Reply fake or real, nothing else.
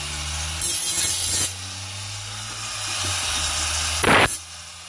real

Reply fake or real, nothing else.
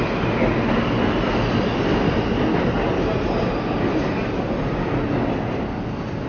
real